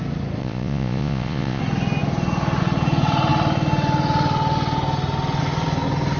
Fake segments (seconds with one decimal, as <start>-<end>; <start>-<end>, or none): 0.4-1.6